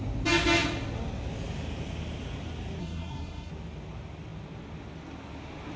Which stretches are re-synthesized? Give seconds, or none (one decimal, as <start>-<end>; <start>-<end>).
2.8-3.5